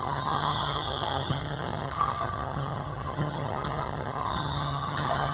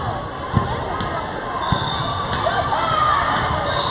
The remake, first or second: first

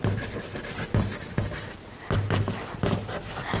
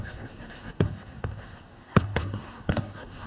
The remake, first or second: second